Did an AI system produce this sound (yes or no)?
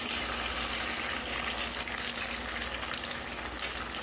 no